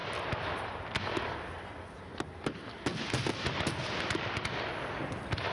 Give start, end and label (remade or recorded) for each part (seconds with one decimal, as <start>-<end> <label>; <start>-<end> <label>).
0.0-5.5 recorded